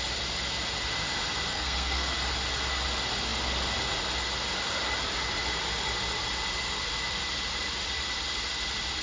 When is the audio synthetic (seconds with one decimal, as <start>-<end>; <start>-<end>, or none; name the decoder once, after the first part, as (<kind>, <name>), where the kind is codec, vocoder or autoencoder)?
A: 1.5-2.1 (codec, SNAC)